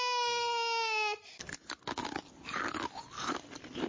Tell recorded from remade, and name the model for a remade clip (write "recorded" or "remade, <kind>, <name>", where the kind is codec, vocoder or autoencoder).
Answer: recorded